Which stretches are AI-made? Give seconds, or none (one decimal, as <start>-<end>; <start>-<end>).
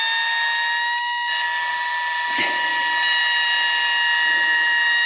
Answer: none